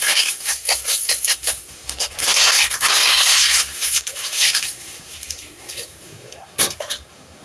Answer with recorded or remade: remade